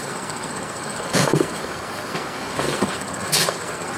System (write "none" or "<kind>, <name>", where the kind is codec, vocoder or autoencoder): codec, SNAC